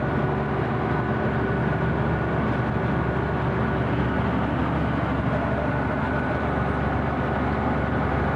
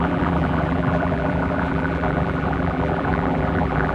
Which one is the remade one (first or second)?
second